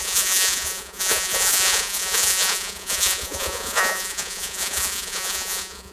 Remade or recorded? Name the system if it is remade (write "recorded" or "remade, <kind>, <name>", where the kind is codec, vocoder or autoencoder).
remade, vocoder, Vocos